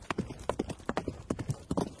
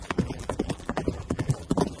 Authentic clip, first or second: first